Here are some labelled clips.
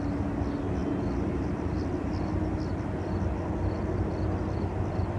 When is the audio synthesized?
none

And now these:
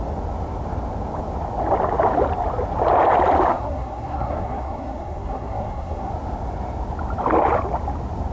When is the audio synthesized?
3.5-6.1 (codec, SNAC)

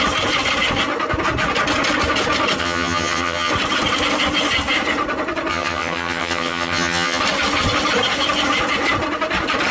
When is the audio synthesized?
2.6-3.5 (vocoder, HiFi-GAN); 5.5-7.2